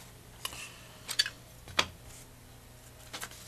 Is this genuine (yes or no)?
yes